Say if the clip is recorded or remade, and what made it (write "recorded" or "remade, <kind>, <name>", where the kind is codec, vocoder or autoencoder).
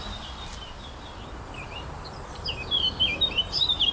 remade, vocoder, BigVGAN v2